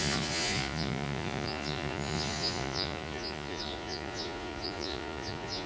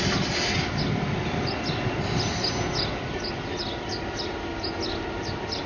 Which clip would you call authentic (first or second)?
second